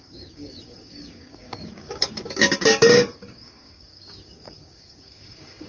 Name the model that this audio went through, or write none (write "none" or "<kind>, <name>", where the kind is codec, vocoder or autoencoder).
codec, DAC